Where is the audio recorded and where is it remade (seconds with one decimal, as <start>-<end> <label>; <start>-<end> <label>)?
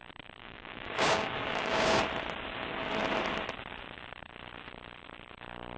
0.0-0.4 recorded; 0.4-2.0 remade; 2.0-5.8 recorded